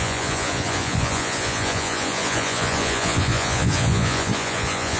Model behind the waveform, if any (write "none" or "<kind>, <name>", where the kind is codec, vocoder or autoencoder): vocoder, Vocos